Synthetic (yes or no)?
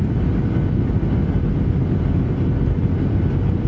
no